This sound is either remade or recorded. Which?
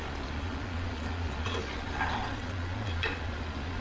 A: remade